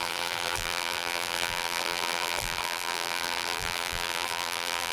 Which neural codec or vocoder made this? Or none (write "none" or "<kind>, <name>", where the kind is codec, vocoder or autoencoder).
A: vocoder, BigVGAN v2